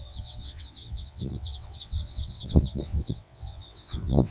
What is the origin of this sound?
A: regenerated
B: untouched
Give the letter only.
A